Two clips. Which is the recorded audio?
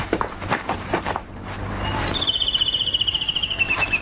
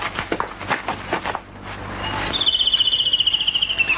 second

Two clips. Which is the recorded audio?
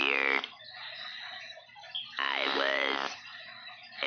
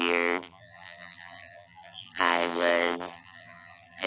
first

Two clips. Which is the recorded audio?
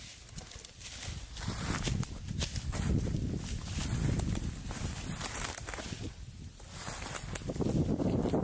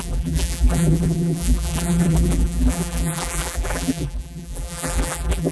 first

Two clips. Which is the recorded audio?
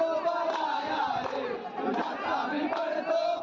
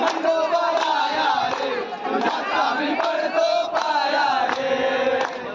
second